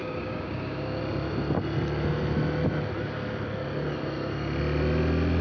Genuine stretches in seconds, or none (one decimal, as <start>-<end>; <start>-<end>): 1.0-5.4